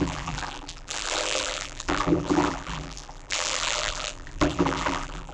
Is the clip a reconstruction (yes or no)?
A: yes